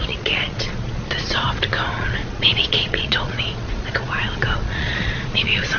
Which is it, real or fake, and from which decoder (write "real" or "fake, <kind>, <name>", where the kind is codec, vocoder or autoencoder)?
fake, vocoder, Vocos